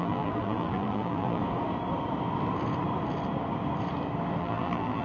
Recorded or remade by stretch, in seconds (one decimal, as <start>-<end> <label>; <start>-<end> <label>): 0.0-1.4 remade; 1.4-4.4 recorded; 4.4-5.0 remade